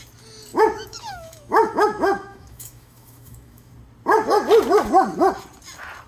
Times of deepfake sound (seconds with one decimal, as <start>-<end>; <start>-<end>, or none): 0.5-3.7